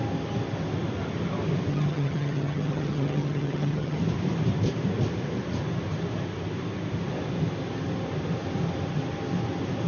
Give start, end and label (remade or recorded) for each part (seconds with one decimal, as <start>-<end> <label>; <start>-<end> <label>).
0.0-1.7 recorded; 1.7-4.0 remade; 4.0-9.9 recorded